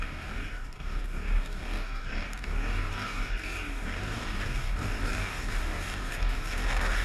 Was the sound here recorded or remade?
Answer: remade